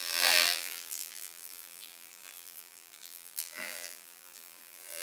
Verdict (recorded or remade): remade